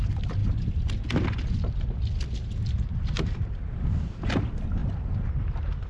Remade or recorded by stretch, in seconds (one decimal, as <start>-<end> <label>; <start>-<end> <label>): 0.0-0.4 recorded; 0.4-0.9 remade; 0.9-2.4 recorded; 2.4-3.6 remade; 3.6-5.9 recorded

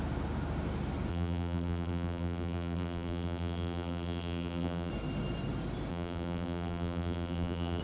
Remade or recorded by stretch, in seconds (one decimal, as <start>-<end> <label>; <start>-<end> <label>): 0.0-1.1 recorded; 1.1-4.9 remade; 4.9-5.9 recorded; 5.9-7.8 remade